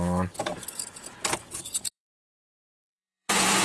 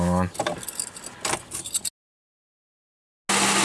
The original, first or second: second